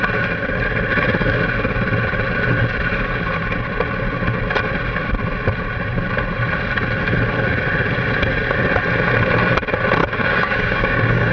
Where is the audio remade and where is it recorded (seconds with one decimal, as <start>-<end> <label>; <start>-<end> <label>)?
0.0-10.0 recorded; 10.0-11.3 remade